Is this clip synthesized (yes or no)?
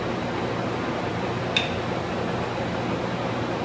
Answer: no